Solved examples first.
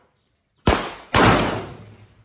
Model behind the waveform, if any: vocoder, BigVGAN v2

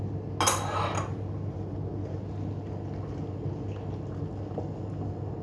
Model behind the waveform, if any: none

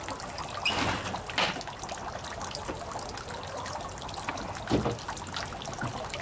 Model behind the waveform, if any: none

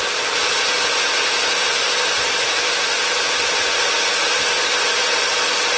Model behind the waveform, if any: none